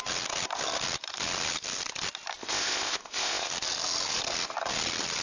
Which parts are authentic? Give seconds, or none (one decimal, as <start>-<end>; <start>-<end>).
0.0-2.3; 3.5-5.2